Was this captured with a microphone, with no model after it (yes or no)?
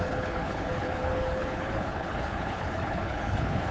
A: no